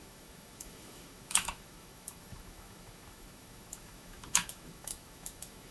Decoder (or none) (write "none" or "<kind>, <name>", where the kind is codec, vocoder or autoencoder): autoencoder, DAC-VAE